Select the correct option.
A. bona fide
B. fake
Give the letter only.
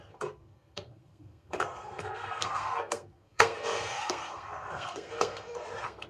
B